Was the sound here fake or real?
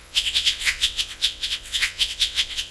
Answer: fake